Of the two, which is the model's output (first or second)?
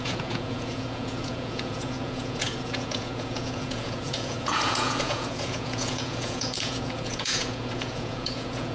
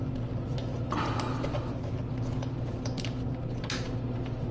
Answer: first